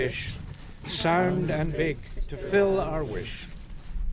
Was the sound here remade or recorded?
recorded